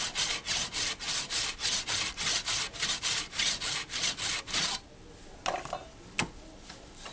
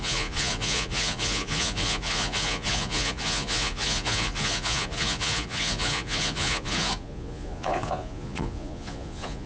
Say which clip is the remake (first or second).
second